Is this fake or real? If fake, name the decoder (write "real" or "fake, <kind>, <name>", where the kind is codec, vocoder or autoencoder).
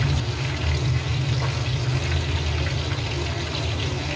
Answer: real